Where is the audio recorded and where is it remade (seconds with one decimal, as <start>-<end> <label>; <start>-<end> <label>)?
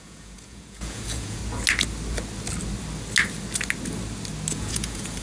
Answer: 0.0-1.4 remade; 1.4-4.5 recorded; 4.5-5.2 remade